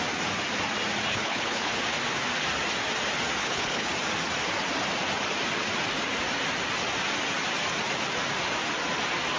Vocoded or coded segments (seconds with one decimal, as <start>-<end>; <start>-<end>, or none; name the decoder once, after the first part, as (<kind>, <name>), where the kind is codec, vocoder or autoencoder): 1.1-1.7 (codec, HILCodec); 3.4-3.9